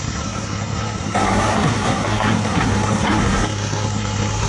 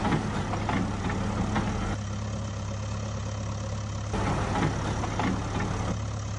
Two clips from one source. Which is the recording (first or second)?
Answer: second